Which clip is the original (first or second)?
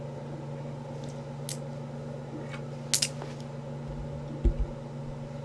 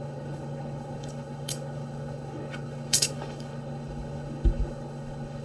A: first